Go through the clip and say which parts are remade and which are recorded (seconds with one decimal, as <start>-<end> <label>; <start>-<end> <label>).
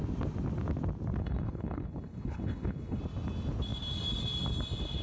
0.0-1.2 recorded; 1.2-3.0 remade; 3.0-5.0 recorded